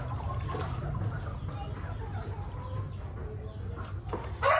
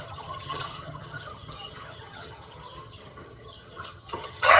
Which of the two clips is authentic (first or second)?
first